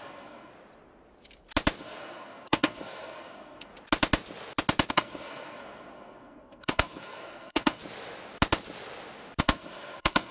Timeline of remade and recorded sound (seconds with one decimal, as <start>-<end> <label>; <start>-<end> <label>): 0.0-0.5 remade; 0.5-1.8 recorded; 1.8-3.7 remade; 3.7-4.9 recorded; 4.9-7.8 remade; 7.8-9.4 recorded; 9.4-10.3 remade